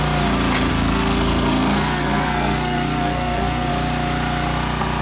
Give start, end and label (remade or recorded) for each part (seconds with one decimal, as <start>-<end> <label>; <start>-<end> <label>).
0.0-0.7 recorded; 0.7-3.7 remade; 3.7-5.0 recorded